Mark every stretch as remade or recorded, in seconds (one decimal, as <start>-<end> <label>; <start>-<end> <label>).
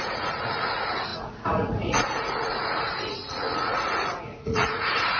0.0-5.2 remade